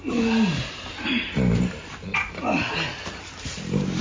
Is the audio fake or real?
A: real